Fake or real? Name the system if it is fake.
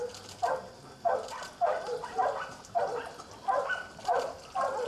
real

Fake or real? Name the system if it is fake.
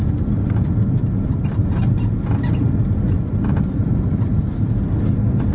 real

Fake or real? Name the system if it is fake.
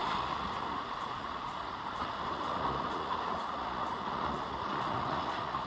fake, vocoder, Vocos